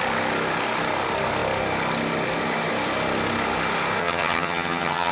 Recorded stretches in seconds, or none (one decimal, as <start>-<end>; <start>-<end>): 0.0-4.0